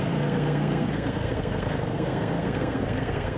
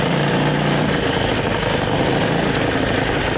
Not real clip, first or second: first